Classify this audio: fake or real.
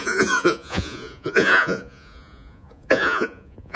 fake